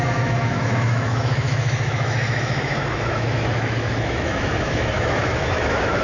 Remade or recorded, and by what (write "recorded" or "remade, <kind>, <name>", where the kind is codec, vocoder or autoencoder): remade, autoencoder, DAC-VAE